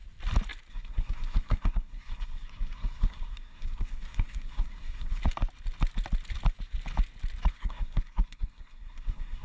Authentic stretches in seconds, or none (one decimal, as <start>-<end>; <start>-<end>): 0.0-0.7; 5.2-7.5

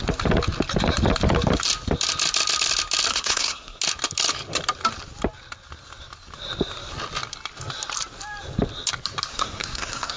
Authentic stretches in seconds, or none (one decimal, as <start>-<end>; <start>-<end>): 0.0-3.1; 3.8-9.3

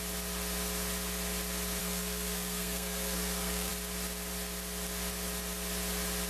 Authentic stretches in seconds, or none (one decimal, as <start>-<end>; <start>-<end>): 0.0-1.8; 3.7-6.3

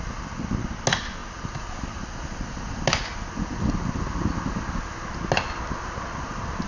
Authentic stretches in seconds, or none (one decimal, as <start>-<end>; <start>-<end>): 0.0-6.7

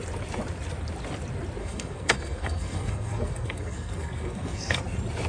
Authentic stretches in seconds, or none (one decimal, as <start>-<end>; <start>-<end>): 0.0-1.6; 4.8-5.3